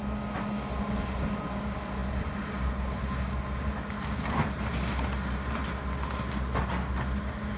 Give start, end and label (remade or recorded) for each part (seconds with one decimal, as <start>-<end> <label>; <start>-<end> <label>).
0.0-7.6 recorded